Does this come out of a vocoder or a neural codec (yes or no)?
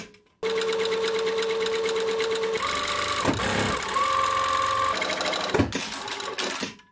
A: no